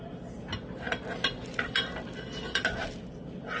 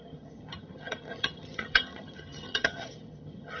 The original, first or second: first